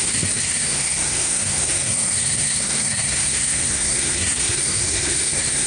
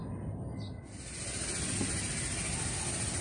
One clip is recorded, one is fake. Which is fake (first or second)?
first